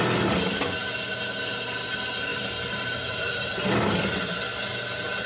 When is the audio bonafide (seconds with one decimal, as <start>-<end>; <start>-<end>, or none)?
0.0-2.3; 3.7-5.3